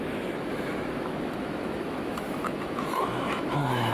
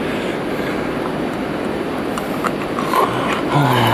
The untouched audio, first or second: second